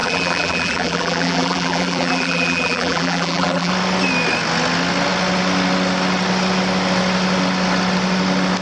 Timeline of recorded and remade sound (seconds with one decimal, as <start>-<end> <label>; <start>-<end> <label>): 0.0-3.7 remade; 3.7-8.6 recorded